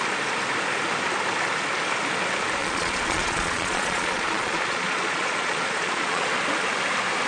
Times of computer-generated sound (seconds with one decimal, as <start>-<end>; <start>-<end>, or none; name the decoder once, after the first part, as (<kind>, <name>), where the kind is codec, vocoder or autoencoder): 2.6-6.3 (vocoder, Vocos)